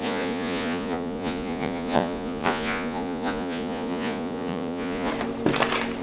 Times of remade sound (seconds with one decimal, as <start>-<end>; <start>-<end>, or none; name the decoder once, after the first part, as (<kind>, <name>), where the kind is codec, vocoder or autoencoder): 0.0-5.1 (vocoder, Vocos)